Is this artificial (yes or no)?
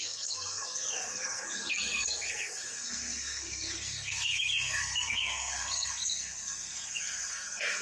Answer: yes